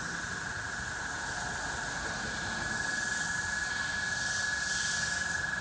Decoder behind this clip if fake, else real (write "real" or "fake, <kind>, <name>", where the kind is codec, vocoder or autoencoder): real